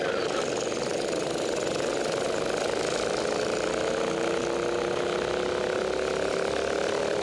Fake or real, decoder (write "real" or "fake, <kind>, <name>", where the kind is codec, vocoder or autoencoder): real